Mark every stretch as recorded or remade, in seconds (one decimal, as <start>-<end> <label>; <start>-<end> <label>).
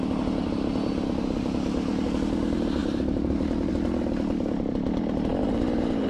0.0-2.8 recorded; 2.8-3.7 remade; 3.7-5.3 recorded; 5.3-6.1 remade